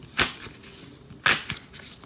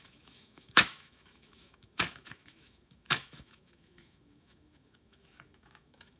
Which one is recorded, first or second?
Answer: first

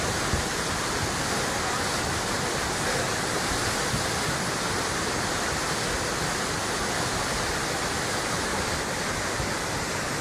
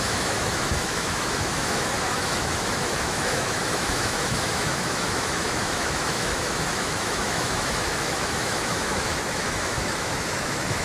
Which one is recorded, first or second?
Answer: first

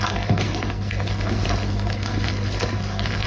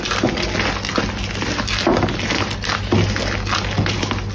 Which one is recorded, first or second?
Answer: second